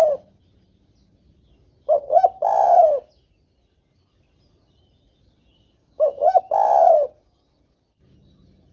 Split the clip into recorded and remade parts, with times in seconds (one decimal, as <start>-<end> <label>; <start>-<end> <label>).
0.0-5.8 recorded; 5.8-6.4 remade; 6.4-8.7 recorded

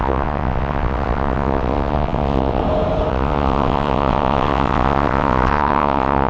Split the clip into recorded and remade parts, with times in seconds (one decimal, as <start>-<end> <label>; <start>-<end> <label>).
0.0-2.6 remade; 2.6-3.1 recorded; 3.1-6.3 remade

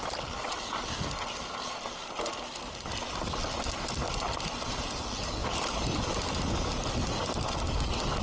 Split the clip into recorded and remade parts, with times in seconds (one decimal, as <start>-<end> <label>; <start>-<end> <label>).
0.0-5.4 recorded; 5.4-6.0 remade; 6.0-8.2 recorded

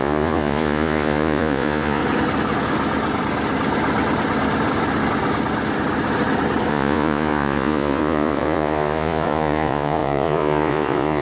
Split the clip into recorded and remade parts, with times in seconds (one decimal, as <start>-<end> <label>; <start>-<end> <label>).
0.0-2.0 remade; 2.0-6.7 recorded; 6.7-11.2 remade